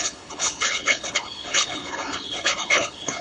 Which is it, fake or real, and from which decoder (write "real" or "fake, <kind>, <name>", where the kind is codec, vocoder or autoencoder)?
fake, codec, HILCodec